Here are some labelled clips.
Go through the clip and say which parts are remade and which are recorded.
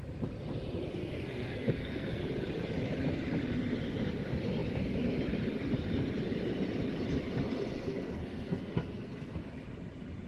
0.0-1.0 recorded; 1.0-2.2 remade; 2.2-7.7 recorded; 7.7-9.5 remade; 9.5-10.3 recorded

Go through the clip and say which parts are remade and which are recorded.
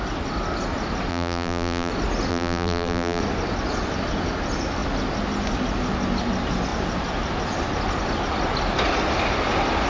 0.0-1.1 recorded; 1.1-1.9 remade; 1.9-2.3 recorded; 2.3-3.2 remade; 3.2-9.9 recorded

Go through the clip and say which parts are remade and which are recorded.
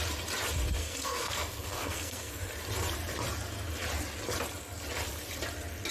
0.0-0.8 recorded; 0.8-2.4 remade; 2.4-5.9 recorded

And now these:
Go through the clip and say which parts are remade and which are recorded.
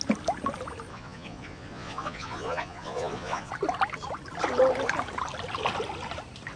0.0-0.9 recorded; 0.9-3.5 remade; 3.5-6.6 recorded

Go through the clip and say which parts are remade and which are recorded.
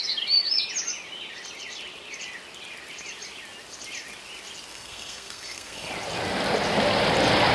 0.0-4.7 recorded; 4.7-5.9 remade; 5.9-7.5 recorded